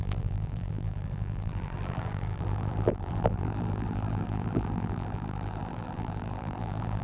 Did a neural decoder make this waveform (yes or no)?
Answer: yes